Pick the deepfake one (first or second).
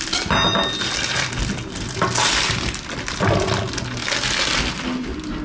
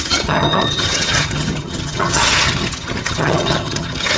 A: second